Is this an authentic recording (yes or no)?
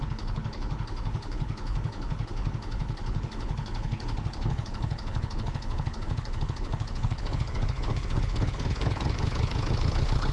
no